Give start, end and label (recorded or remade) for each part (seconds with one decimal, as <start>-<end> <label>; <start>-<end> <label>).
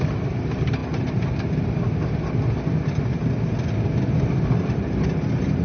0.0-0.8 remade; 0.8-4.2 recorded; 4.2-5.6 remade